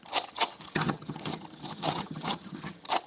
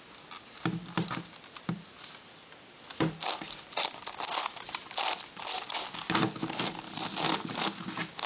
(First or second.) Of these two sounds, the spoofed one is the first